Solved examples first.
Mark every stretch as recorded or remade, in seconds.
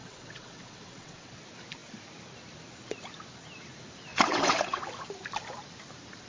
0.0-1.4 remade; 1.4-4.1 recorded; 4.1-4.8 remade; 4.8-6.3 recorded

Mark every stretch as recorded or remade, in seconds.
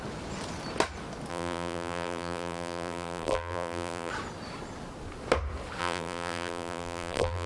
0.0-1.3 recorded; 1.3-4.1 remade; 4.1-5.8 recorded; 5.8-7.5 remade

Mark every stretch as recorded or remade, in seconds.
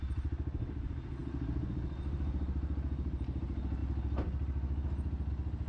0.0-5.7 recorded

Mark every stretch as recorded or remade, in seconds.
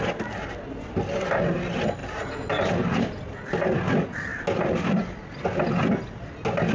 0.0-6.7 recorded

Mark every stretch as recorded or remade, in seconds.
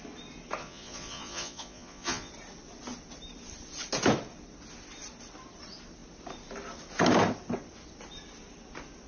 0.0-0.6 recorded; 0.6-2.3 remade; 2.3-9.1 recorded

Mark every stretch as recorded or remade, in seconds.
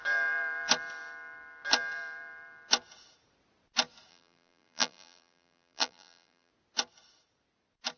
0.0-4.1 recorded; 4.1-6.5 remade; 6.5-8.0 recorded